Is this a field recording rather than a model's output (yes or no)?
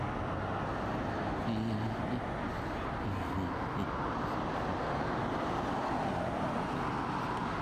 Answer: yes